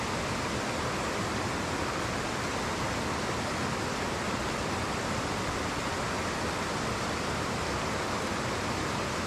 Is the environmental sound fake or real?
real